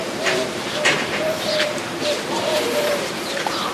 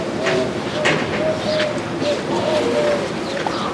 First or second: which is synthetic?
first